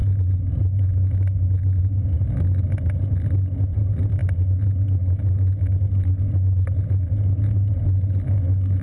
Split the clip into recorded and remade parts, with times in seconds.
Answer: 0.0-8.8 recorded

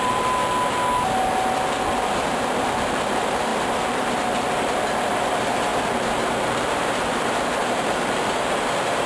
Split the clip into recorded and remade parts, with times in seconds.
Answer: 0.0-0.4 remade; 0.4-2.2 recorded; 2.2-5.7 remade; 5.7-6.2 recorded; 6.2-7.6 remade; 7.6-9.1 recorded

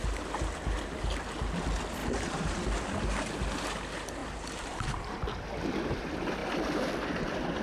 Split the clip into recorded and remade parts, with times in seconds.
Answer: 0.0-2.0 recorded; 2.0-2.6 remade; 2.6-4.2 recorded; 4.2-5.2 remade; 5.2-7.6 recorded

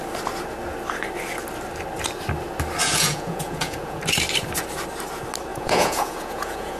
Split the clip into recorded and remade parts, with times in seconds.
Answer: 0.0-2.8 recorded; 2.8-4.0 remade; 4.0-5.5 recorded; 5.5-6.8 remade